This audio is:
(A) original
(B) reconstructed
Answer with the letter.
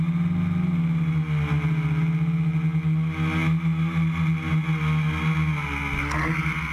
A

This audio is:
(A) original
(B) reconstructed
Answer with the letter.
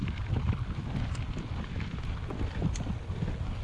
A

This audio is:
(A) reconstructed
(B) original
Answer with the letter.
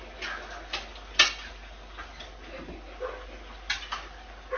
B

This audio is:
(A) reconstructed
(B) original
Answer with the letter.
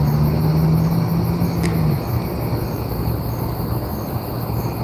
B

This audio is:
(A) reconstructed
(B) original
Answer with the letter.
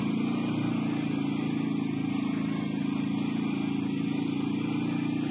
B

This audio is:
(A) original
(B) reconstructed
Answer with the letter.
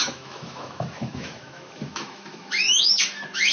B